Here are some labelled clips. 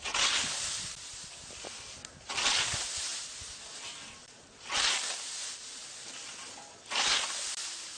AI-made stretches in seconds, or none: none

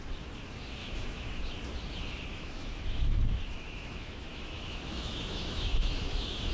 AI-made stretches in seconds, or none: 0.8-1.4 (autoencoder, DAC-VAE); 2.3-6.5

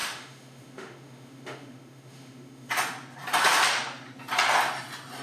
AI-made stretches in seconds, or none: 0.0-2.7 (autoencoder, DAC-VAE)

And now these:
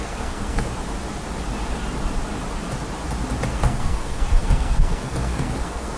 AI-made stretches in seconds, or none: 0.0-0.7 (codec, SNAC); 3.5-6.0

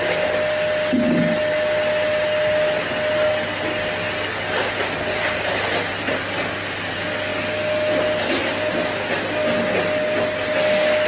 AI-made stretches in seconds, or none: none

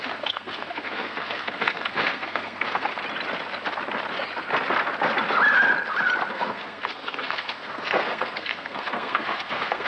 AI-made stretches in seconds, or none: 0.0-2.9 (codec, SNAC); 6.3-9.9

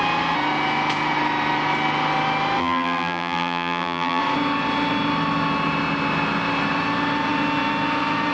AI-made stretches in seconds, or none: 2.6-4.2 (vocoder, BigVGAN v2)